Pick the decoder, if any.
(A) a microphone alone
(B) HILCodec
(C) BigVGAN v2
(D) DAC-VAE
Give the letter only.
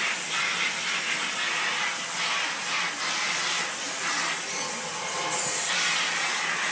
A